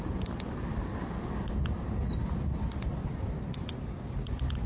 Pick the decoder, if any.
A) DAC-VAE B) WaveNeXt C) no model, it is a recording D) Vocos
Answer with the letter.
C